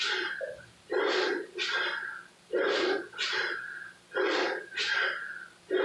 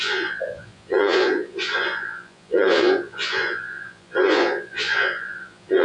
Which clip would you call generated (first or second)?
second